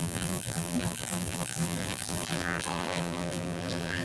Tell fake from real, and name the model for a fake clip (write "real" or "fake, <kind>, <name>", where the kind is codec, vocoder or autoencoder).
fake, vocoder, BigVGAN v2